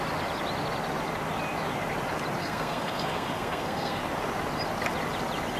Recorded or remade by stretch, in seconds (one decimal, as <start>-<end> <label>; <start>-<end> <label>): 0.0-2.4 recorded; 2.4-4.0 remade; 4.0-5.6 recorded